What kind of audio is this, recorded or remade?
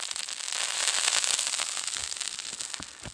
recorded